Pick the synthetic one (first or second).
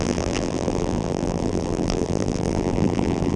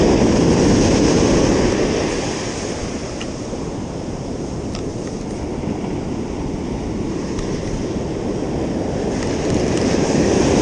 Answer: first